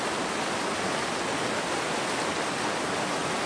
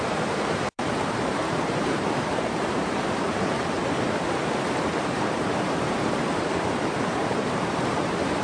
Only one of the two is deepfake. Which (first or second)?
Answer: second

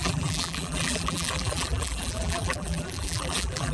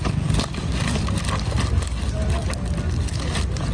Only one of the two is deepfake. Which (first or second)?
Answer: first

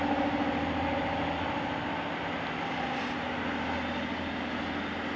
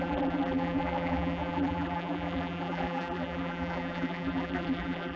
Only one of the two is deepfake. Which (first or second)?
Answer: second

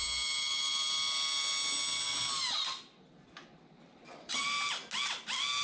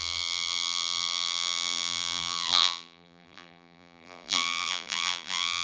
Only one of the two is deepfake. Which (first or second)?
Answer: second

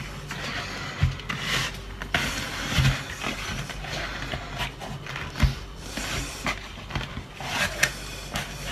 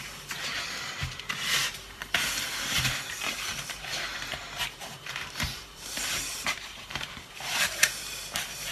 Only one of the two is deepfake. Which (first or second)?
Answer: second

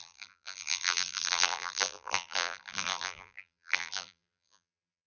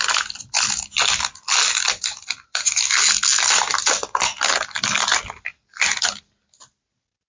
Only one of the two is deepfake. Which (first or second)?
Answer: first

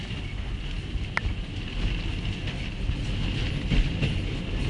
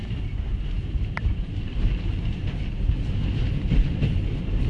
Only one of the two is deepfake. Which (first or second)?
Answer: second